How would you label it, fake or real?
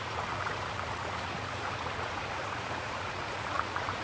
fake